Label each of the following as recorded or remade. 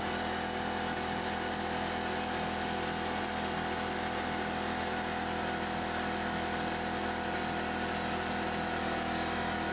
recorded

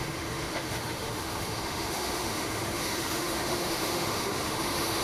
remade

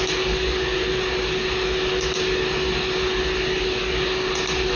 recorded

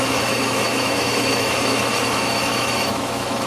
remade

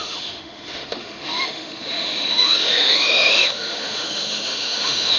remade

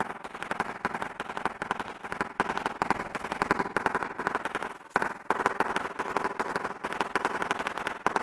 recorded